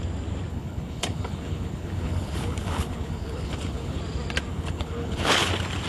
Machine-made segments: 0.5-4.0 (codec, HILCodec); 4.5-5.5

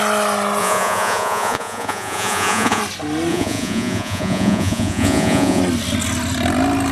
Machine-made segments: 0.6-2.8 (vocoder, Vocos); 3.3-5.6

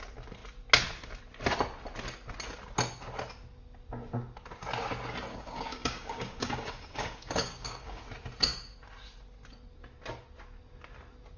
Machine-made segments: 5.3-8.0 (codec, DAC)

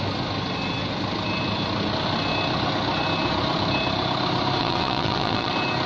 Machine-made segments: 4.6-5.5 (vocoder, WaveNeXt)